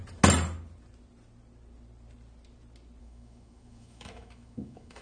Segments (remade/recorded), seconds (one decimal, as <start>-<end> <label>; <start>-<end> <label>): 0.0-3.0 recorded; 3.0-5.0 remade